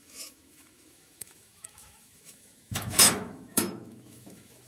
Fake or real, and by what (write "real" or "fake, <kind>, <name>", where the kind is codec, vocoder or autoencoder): fake, autoencoder, DAC-VAE